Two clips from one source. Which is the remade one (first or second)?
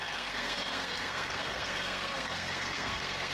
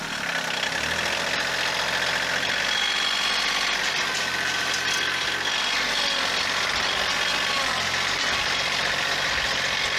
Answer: first